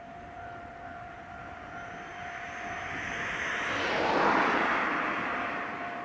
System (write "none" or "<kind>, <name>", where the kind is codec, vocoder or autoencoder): vocoder, BigVGAN v2